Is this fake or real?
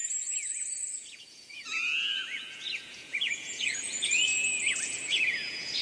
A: fake